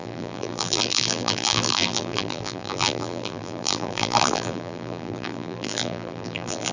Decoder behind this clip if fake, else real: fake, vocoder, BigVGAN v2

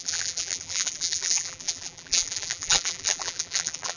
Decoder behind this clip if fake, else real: fake, vocoder, BigVGAN v2